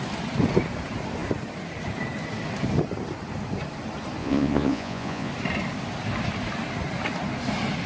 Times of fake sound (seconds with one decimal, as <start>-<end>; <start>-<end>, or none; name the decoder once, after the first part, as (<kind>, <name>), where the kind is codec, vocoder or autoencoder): 4.2-5.3 (vocoder, Vocos)